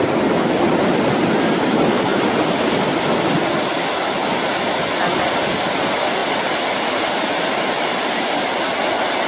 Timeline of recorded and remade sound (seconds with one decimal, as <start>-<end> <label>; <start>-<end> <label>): 0.0-9.3 recorded